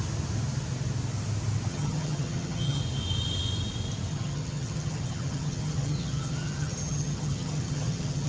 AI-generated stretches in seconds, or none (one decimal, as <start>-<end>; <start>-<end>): 1.7-2.8; 4.1-8.3